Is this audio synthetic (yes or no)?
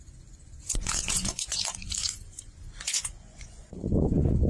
yes